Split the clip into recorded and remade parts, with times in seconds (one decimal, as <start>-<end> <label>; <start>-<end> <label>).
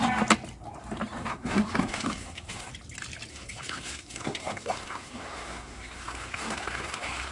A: 0.0-1.2 recorded; 1.2-2.7 remade; 2.7-3.3 recorded; 3.3-7.3 remade